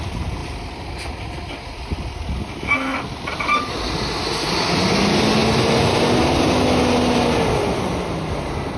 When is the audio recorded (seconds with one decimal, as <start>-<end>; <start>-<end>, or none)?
0.0-8.8